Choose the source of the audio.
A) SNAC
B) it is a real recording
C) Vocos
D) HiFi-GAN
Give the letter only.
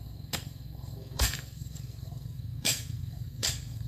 A